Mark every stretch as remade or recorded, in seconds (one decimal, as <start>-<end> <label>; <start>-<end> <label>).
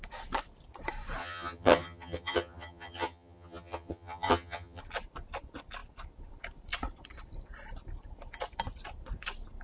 0.0-1.2 recorded; 1.2-4.8 remade; 4.8-9.6 recorded